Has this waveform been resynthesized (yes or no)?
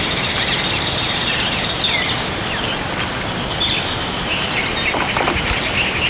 no